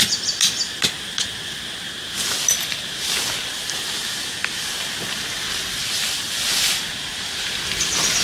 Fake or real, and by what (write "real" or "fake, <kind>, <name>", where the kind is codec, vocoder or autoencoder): real